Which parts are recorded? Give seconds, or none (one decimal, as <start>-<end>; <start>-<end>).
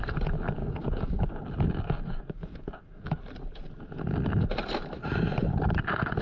0.0-0.6; 3.2-6.2